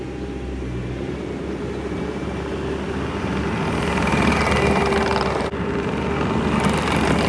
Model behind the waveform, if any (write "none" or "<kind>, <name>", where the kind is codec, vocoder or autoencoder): none